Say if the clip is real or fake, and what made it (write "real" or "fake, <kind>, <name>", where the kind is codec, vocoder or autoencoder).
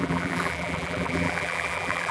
fake, vocoder, BigVGAN v2